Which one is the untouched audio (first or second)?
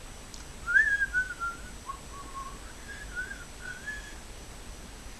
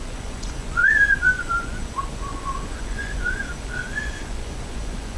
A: first